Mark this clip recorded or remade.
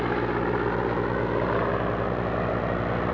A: recorded